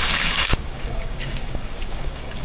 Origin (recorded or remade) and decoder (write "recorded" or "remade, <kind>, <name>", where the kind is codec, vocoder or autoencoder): remade, codec, DAC